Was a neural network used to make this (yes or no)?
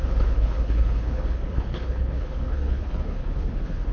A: yes